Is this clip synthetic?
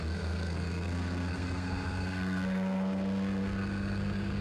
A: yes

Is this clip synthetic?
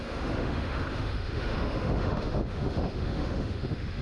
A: yes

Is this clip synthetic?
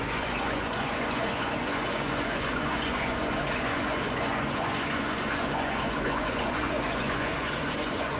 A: yes